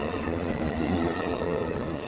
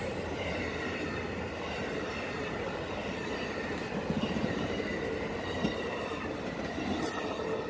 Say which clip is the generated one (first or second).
first